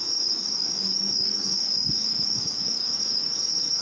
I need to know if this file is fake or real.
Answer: fake